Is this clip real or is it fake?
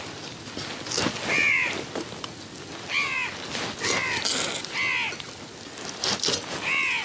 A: real